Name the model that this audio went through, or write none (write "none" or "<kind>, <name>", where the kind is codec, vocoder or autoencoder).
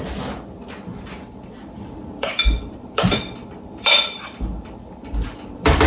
vocoder, BigVGAN v2